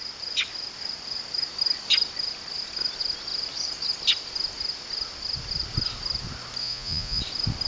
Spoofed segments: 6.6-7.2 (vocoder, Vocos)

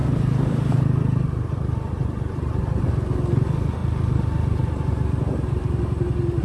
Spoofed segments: 0.0-2.9 (vocoder, BigVGAN v2); 3.8-6.4

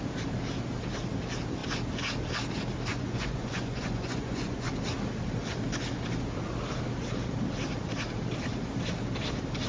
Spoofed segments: 2.9-4.7 (vocoder, Vocos)

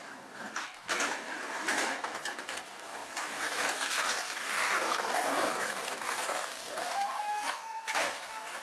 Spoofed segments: 0.0-8.6 (codec, DAC)

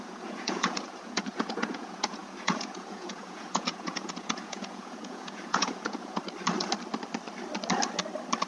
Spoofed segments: 0.0-6.2 (vocoder, Vocos)

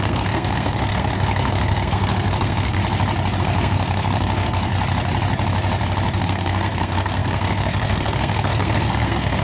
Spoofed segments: 0.0-2.8 (codec, SNAC); 3.4-4.7; 6.2-9.4